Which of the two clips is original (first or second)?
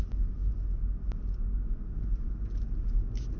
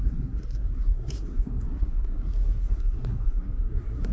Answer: first